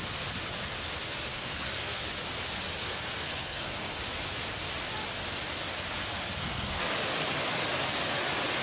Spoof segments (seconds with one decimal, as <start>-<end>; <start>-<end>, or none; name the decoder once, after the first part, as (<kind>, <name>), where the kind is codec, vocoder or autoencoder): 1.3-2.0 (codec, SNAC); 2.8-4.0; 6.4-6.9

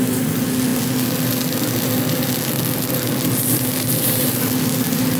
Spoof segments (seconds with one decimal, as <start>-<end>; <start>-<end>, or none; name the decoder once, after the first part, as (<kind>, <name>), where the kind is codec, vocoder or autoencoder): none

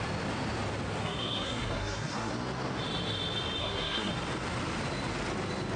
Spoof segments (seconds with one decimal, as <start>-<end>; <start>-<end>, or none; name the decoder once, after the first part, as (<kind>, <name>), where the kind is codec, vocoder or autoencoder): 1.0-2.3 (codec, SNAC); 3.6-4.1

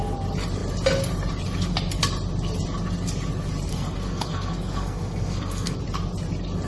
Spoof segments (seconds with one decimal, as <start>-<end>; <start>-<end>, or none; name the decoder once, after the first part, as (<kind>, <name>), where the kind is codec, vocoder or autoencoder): 3.7-5.8 (codec, SNAC)

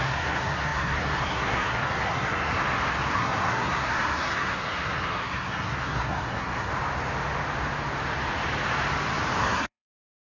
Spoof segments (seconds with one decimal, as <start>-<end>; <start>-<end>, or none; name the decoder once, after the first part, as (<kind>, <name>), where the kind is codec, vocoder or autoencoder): 0.0-2.6 (codec, SNAC); 3.1-6.7; 9.4-10.3

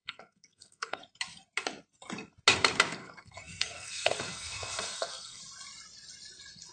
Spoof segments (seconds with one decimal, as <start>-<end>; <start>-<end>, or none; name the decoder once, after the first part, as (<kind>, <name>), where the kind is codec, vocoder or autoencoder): 0.0-1.0 (codec, SNAC); 3.0-5.4